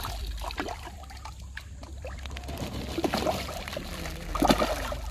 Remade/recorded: remade